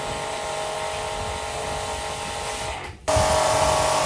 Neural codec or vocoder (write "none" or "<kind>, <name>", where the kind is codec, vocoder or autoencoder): none